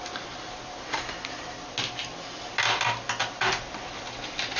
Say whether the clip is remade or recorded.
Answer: recorded